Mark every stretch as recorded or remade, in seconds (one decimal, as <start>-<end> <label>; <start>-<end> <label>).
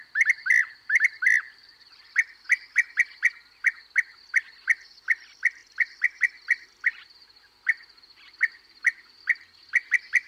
0.0-10.3 recorded